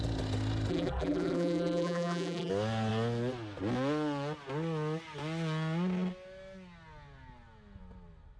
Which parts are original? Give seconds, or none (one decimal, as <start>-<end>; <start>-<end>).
0.0-0.7; 2.5-8.4